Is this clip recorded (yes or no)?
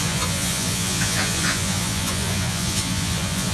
no